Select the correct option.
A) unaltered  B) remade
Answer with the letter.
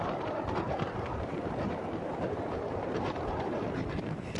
B